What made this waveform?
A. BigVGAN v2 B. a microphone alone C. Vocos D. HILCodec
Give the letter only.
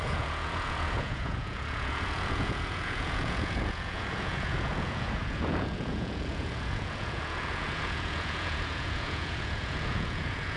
C